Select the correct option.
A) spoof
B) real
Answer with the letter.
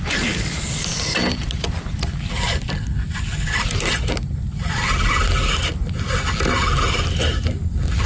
B